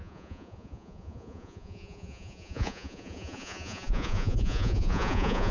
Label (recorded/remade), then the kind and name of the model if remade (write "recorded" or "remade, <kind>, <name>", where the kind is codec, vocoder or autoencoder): remade, vocoder, Vocos